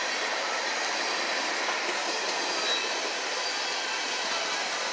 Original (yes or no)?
yes